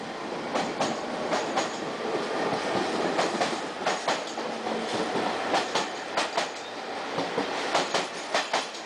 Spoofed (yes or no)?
no